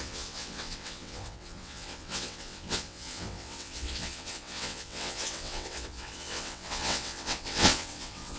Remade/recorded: remade